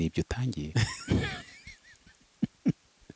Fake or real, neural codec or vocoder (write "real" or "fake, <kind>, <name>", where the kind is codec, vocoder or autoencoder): real